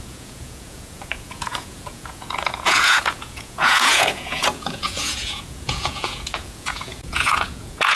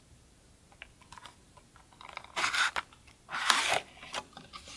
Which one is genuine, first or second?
second